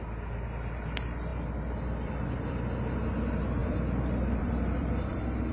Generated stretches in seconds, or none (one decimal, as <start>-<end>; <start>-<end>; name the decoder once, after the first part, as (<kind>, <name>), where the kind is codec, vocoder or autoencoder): 1.3-2.6 (vocoder, BigVGAN v2); 3.6-5.5